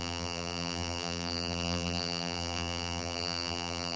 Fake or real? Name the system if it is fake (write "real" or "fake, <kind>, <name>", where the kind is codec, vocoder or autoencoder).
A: fake, vocoder, BigVGAN v2